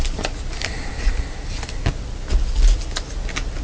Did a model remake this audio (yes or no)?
no